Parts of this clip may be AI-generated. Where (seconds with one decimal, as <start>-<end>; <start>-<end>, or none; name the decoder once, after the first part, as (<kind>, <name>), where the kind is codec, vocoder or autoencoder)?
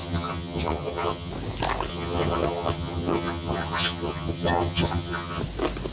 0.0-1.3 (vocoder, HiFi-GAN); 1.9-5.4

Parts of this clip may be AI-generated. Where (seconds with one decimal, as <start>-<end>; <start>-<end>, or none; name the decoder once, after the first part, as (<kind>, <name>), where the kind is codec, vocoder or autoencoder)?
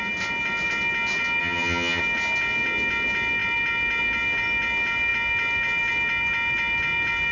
1.4-2.0 (vocoder, HiFi-GAN)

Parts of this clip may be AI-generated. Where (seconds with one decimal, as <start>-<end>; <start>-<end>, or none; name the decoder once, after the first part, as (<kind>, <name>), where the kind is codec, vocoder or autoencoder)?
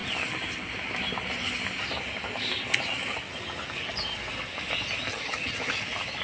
5.1-5.7 (vocoder, HiFi-GAN)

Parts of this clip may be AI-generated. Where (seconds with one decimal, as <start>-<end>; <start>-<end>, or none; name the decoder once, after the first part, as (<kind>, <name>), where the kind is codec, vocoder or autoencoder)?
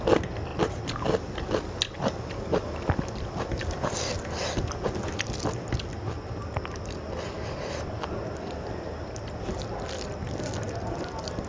none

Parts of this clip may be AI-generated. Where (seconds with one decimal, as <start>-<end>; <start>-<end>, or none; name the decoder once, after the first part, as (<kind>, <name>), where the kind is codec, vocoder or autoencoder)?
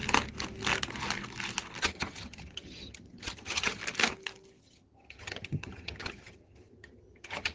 1.8-3.8 (vocoder, HiFi-GAN); 4.6-7.5